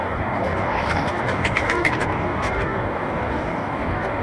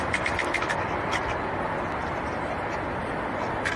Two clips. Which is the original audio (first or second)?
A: second